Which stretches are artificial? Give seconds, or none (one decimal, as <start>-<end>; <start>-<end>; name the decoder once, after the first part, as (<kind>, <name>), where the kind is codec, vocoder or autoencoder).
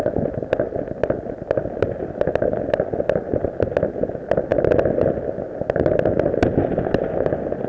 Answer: none